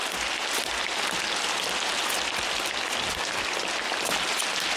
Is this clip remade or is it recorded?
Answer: recorded